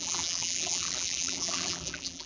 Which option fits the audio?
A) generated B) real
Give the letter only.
A